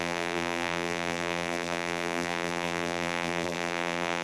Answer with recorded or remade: remade